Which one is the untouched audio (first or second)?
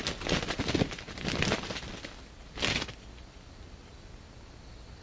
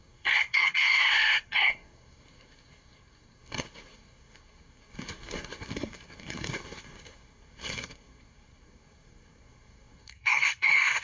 first